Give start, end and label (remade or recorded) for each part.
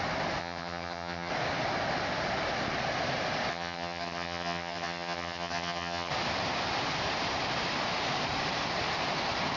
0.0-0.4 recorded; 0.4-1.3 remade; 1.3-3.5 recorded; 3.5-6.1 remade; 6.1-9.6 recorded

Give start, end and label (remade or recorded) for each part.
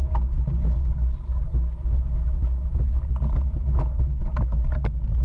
0.0-3.5 recorded; 3.5-4.1 remade; 4.1-5.2 recorded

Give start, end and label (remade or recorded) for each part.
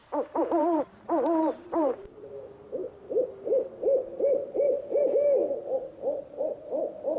0.0-2.3 remade; 2.3-7.2 recorded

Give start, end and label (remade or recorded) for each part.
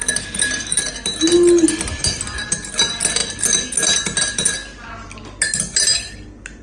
0.0-6.6 recorded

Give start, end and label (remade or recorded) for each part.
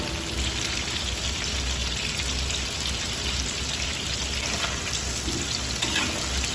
0.0-6.5 recorded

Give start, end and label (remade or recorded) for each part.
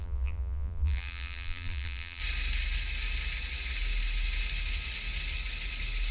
0.0-2.2 remade; 2.2-6.1 recorded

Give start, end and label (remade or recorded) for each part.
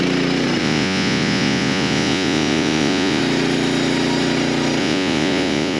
0.0-0.6 recorded; 0.6-3.2 remade; 3.2-4.8 recorded; 4.8-5.8 remade